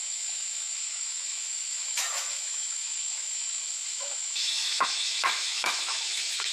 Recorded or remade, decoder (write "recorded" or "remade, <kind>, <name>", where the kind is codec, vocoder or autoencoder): remade, autoencoder, DAC-VAE